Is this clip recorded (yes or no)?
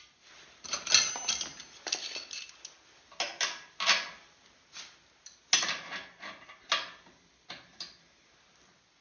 yes